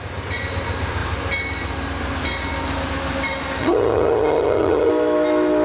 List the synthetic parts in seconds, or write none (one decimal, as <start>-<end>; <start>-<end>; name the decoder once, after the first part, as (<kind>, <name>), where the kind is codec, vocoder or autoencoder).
3.6-4.9 (vocoder, HiFi-GAN)